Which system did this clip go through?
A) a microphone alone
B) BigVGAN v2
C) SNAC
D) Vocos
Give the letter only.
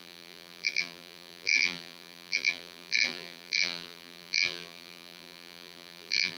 B